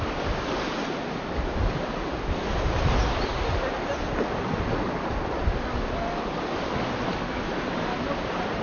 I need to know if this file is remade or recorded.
recorded